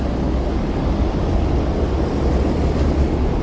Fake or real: real